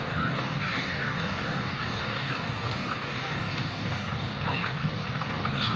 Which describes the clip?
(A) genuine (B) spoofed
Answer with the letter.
B